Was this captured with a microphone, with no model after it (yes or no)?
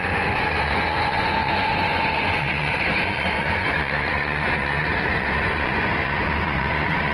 no